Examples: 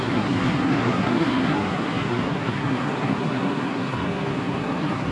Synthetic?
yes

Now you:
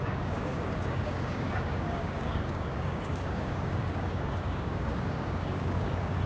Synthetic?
yes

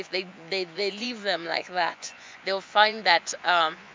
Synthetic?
yes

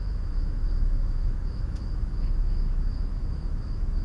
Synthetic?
yes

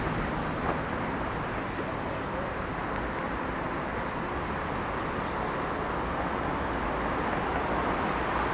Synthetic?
no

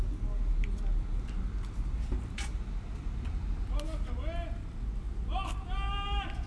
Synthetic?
no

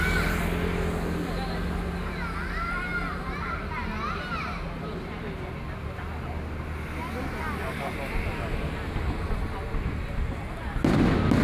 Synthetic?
no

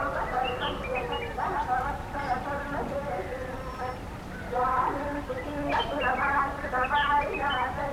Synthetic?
no